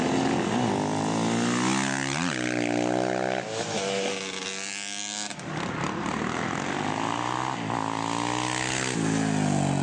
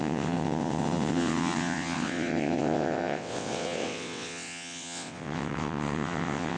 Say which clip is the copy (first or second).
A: second